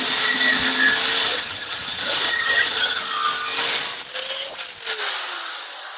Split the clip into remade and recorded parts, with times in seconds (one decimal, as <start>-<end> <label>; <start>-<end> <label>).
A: 0.0-1.2 recorded; 1.2-3.0 remade; 3.0-6.0 recorded